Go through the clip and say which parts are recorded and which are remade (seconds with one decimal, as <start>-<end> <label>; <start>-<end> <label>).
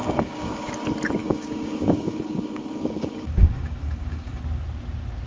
0.0-0.7 remade; 0.7-1.2 recorded; 1.2-4.4 remade; 4.4-5.3 recorded